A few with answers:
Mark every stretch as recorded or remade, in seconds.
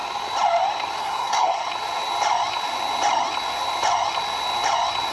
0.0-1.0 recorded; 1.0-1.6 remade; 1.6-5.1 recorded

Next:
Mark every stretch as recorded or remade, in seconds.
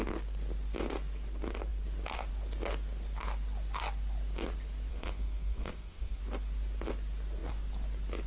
0.0-4.9 recorded; 4.9-6.2 remade; 6.2-8.3 recorded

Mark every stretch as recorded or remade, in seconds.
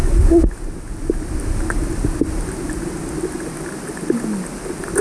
0.0-5.0 recorded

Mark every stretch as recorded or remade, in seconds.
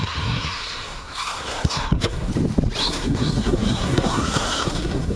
0.0-2.3 remade; 2.3-2.8 recorded; 2.8-5.2 remade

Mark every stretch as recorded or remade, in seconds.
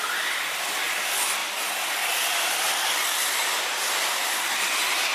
0.0-5.1 recorded